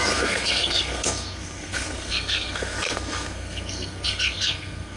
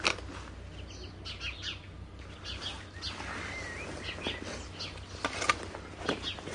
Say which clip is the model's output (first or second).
first